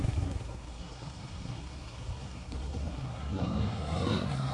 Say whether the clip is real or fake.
fake